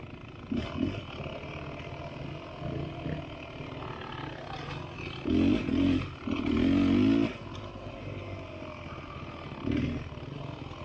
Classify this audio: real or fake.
real